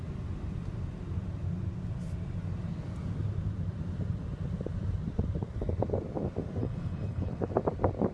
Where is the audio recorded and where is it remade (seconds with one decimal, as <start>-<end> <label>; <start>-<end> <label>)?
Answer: 0.0-6.6 recorded; 6.6-7.5 remade; 7.5-8.1 recorded